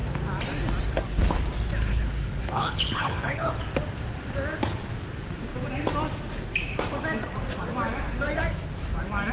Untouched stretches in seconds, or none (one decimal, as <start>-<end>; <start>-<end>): 0.0-1.9; 3.6-9.3